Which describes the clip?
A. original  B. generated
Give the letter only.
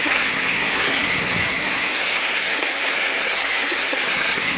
B